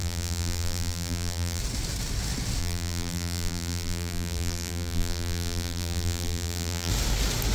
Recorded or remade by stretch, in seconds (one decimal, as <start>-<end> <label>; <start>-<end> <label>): 0.0-1.6 remade; 1.6-2.6 recorded; 2.6-6.9 remade; 6.9-7.5 recorded